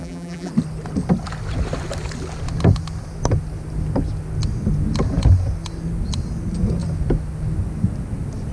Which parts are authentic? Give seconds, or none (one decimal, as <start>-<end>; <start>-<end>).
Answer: 0.5-8.5